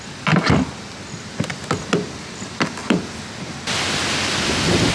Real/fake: real